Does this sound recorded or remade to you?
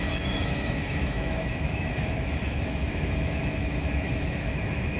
remade